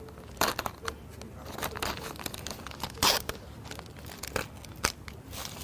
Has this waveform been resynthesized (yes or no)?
no